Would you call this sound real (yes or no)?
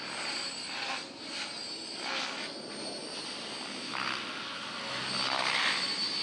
yes